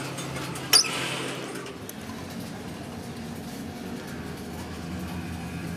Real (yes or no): yes